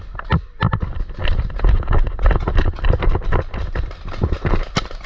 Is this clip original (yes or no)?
yes